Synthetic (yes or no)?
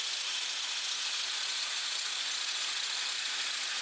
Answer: yes